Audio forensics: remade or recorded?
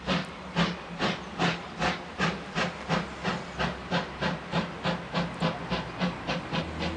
recorded